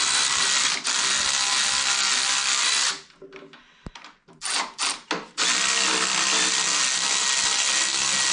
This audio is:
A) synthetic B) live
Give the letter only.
B